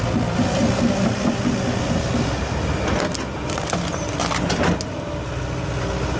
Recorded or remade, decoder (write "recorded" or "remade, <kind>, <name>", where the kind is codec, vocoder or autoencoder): recorded